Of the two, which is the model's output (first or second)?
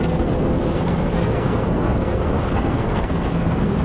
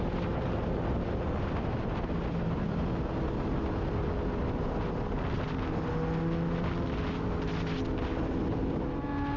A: first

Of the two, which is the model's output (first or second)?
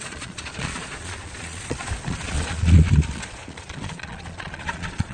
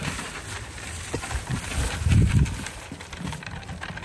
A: first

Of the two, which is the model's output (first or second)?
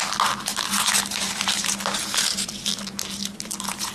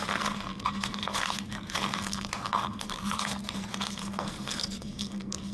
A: second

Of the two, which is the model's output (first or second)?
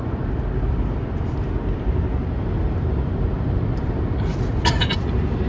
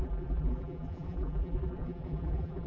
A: second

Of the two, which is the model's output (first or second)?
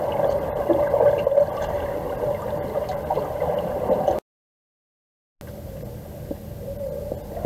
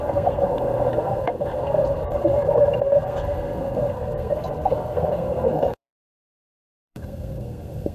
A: second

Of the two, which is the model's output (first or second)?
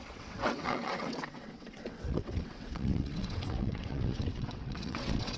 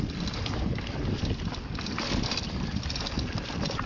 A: first